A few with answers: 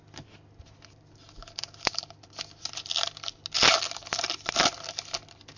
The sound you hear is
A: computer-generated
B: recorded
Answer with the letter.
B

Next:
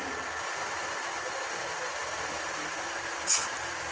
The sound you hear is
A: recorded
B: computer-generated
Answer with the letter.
A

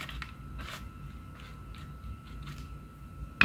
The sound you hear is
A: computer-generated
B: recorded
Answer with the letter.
B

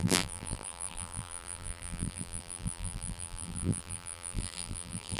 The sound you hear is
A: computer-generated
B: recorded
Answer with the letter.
A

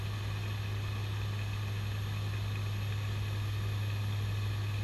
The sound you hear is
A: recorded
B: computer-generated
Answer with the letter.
A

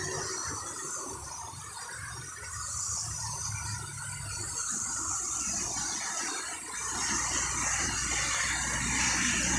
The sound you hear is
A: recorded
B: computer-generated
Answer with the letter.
A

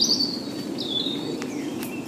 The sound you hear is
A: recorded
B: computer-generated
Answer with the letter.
A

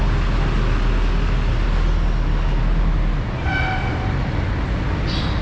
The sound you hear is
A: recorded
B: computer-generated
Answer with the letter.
A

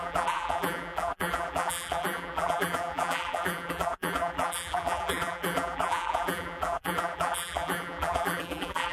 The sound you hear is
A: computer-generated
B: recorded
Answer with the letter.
A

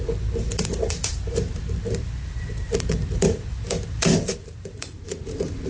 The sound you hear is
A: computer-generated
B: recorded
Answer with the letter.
A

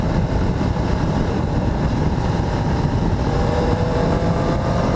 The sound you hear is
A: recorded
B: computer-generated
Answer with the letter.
B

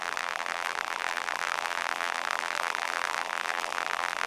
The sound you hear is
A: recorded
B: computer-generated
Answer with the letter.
B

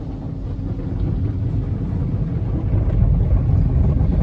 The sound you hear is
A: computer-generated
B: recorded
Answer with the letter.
B